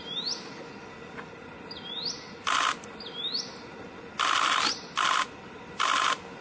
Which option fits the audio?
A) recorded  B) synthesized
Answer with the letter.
A